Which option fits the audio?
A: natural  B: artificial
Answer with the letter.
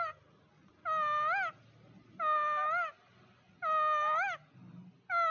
A